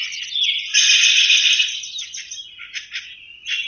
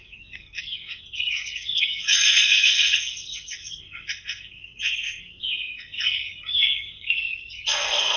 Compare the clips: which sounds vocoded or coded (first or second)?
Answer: second